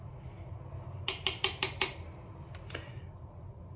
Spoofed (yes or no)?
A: no